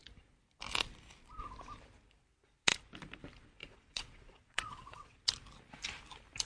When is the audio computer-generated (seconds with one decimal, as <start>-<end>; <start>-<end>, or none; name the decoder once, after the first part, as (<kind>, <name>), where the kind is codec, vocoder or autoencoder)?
3.6-5.2 (vocoder, WaveNeXt)